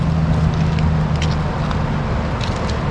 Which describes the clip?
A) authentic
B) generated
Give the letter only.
A